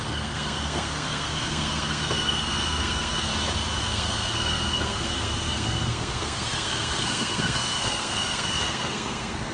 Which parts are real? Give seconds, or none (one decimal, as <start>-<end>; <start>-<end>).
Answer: 3.3-3.8